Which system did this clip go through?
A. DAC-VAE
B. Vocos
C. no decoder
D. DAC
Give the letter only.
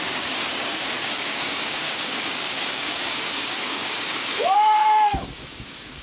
D